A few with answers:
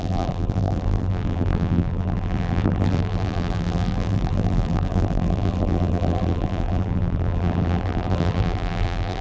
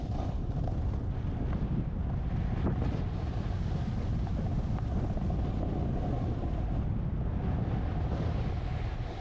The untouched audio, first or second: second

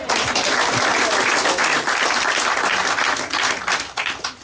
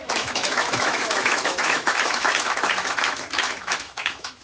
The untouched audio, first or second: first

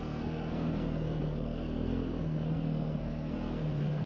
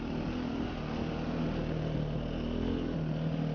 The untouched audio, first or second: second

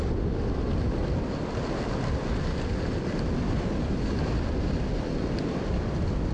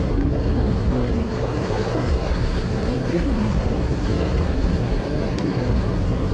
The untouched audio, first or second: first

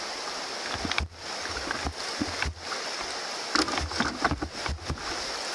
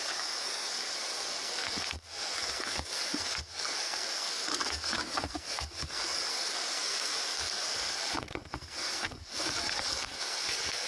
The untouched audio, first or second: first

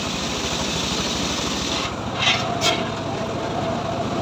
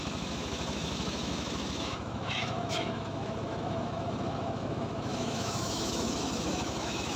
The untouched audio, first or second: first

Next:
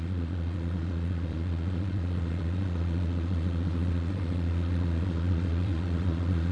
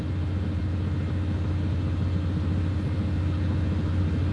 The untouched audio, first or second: second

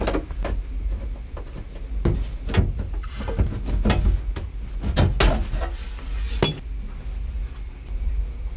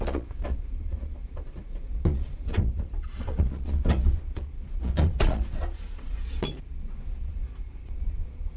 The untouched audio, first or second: first